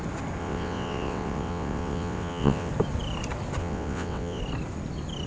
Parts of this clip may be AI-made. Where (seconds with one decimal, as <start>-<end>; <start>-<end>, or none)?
0.4-2.7; 3.6-4.4